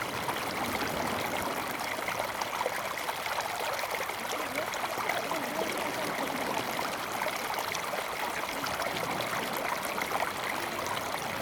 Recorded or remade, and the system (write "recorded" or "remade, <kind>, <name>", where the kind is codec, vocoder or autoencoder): recorded